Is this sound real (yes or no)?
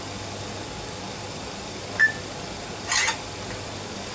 yes